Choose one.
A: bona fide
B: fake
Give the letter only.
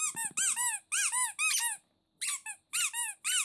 A